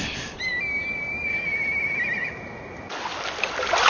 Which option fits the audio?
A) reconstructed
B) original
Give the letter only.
B